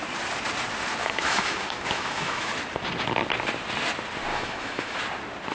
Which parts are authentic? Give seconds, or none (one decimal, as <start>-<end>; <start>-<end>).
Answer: 0.0-1.0; 2.5-4.3; 5.0-5.5